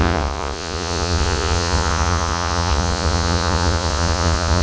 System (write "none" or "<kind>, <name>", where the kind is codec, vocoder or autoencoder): vocoder, Vocos